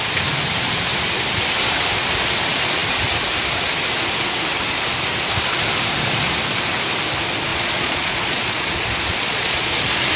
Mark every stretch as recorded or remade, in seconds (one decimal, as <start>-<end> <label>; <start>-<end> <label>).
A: 0.0-7.5 recorded; 7.5-9.7 remade; 9.7-10.2 recorded